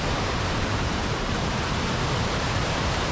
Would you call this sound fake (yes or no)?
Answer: yes